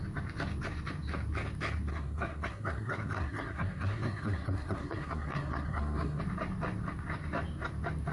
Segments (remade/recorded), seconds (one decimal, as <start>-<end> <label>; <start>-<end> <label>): 0.0-1.9 recorded; 1.9-6.2 remade; 6.2-8.1 recorded